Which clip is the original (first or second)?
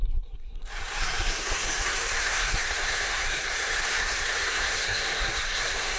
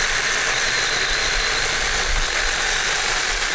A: second